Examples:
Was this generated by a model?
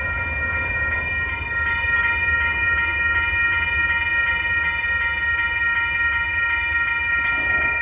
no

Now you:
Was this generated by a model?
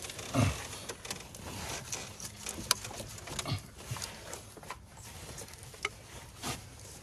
no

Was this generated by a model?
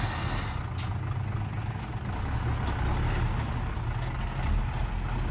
no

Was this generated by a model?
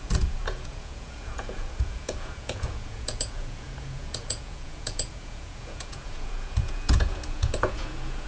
yes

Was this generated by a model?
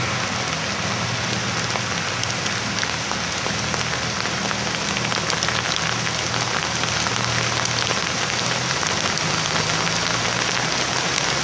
no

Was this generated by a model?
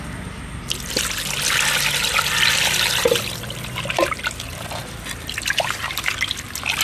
no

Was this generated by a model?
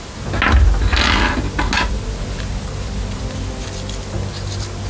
no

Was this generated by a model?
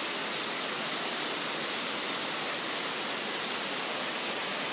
no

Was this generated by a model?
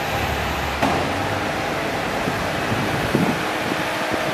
no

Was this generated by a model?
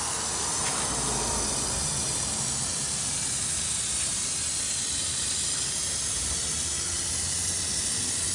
no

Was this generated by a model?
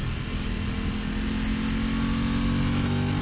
no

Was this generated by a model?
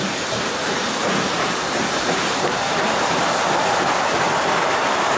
yes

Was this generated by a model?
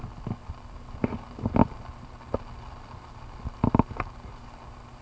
no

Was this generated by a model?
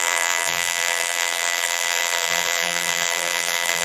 yes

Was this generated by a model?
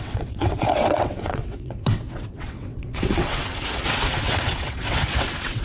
yes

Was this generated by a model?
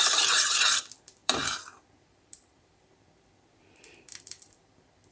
yes